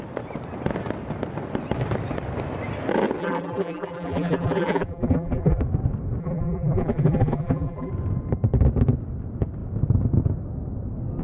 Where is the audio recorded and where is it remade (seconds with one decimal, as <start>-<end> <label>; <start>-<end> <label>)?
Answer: 0.0-3.2 recorded; 3.2-5.6 remade; 5.6-6.2 recorded; 6.2-7.9 remade; 7.9-11.2 recorded